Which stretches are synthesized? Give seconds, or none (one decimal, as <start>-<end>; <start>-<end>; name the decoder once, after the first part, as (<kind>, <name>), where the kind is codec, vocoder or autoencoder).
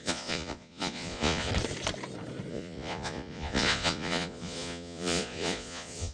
0.0-1.5 (vocoder, Vocos); 2.5-6.1